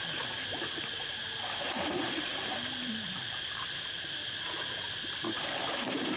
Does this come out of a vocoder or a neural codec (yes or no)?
no